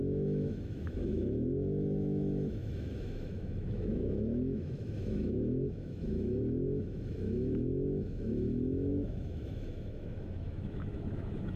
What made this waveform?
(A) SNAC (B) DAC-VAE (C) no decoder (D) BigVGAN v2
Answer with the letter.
B